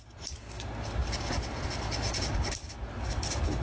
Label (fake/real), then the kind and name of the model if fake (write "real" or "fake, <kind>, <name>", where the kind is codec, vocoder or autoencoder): real